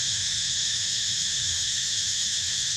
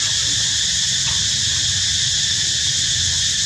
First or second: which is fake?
first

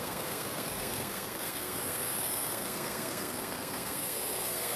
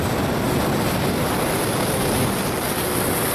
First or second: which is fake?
first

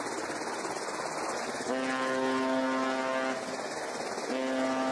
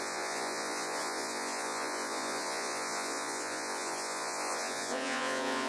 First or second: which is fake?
second